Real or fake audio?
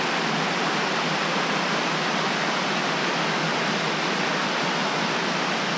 real